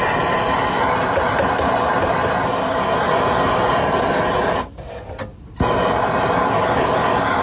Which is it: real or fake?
real